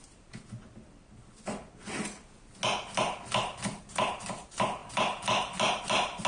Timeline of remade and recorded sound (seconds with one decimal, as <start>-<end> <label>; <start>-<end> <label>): 0.0-6.3 recorded